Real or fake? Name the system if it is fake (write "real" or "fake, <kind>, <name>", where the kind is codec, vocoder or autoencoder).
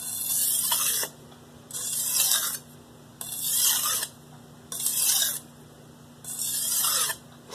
real